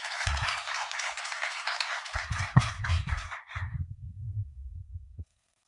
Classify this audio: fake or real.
fake